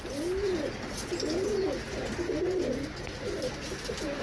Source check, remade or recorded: recorded